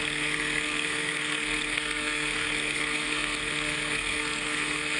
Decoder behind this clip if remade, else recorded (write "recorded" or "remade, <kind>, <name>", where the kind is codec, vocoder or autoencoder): remade, codec, SNAC